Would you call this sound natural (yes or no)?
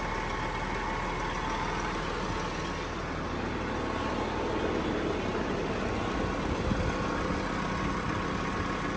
yes